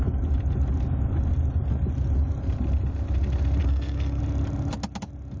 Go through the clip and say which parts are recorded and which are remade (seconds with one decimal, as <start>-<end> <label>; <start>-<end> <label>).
0.0-3.6 recorded; 3.6-4.2 remade; 4.2-5.4 recorded